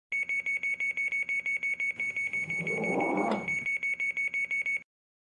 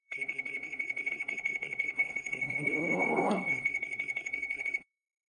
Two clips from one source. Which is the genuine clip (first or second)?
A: first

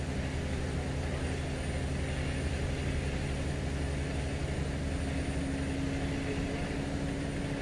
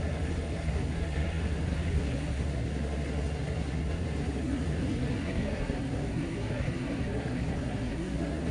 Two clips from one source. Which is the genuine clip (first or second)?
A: first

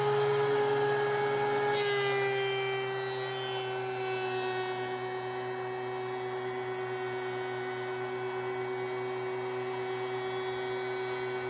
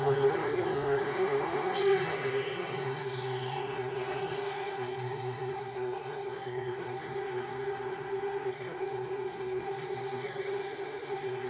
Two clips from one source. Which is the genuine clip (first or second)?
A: first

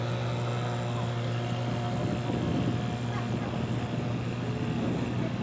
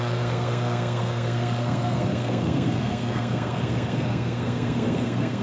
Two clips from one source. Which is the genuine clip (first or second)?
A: first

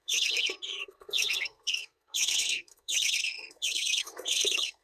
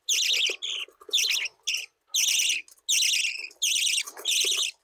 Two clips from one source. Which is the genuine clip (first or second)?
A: second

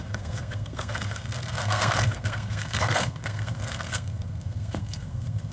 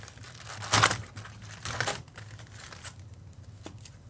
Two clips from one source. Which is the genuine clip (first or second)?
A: second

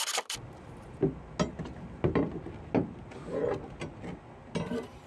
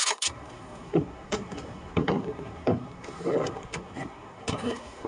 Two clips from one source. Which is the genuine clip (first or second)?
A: first